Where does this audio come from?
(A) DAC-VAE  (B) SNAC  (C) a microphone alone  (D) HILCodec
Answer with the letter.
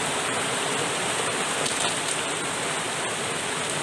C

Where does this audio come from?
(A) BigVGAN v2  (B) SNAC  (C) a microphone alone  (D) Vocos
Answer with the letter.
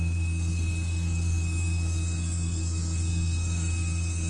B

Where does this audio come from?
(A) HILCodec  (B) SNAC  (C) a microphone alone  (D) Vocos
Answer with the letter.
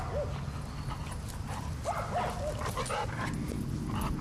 C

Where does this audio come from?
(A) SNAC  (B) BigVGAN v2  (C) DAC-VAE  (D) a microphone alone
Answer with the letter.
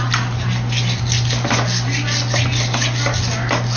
D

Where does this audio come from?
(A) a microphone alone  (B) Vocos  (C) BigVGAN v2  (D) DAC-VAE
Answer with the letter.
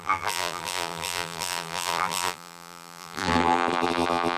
C